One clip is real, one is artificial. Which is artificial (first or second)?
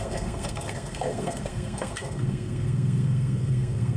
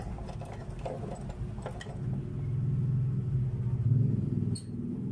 first